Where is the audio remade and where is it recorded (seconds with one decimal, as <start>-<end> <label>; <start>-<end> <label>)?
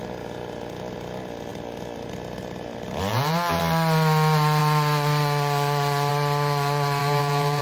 0.0-3.1 recorded; 3.1-3.6 remade; 3.6-7.0 recorded; 7.0-7.6 remade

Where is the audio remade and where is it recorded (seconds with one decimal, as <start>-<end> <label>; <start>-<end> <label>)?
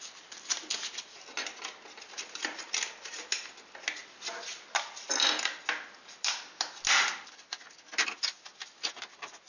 0.0-9.5 recorded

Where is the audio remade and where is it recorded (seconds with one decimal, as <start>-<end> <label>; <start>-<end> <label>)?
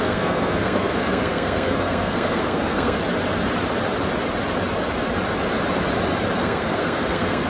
0.0-3.0 remade; 3.0-6.4 recorded; 6.4-7.5 remade